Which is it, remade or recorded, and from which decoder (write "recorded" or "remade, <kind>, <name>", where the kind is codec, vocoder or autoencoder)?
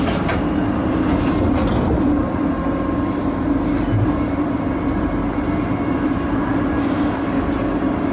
recorded